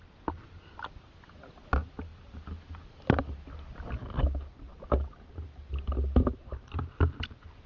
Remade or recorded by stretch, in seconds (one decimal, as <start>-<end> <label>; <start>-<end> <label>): 0.0-7.7 recorded